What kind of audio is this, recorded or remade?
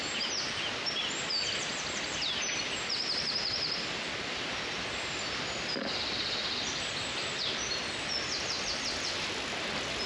recorded